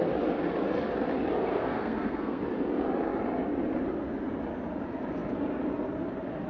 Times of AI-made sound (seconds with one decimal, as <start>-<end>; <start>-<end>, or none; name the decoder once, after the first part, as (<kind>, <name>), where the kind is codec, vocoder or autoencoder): 1.5-2.4 (codec, SNAC)